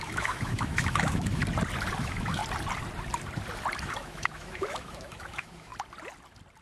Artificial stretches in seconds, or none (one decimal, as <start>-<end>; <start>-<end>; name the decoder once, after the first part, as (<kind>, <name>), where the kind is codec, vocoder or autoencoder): 0.0-1.4 (autoencoder, DAC-VAE); 2.0-2.4; 3.8-5.7